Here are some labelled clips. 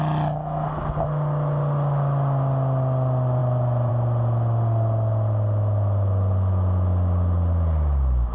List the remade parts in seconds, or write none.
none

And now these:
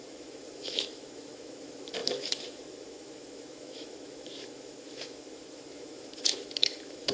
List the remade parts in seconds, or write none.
0.0-7.1 (autoencoder, DAC-VAE)

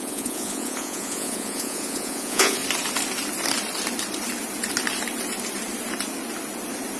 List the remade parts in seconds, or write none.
0.0-2.6 (vocoder, Vocos)